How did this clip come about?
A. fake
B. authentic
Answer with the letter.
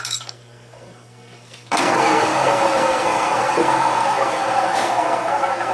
A